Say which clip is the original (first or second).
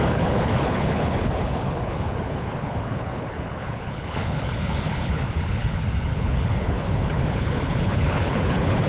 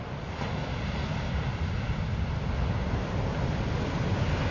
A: second